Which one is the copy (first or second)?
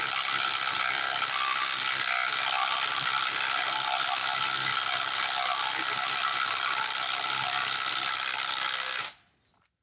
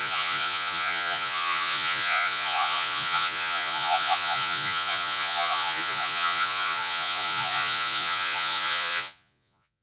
second